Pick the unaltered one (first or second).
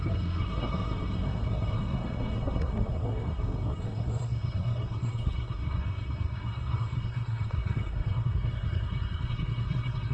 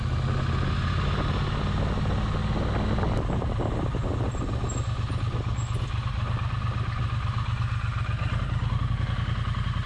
second